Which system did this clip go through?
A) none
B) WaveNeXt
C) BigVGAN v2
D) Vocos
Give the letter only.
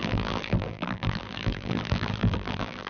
C